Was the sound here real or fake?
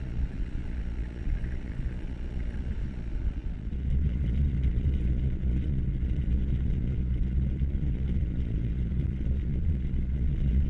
fake